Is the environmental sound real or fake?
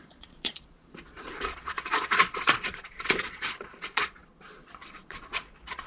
fake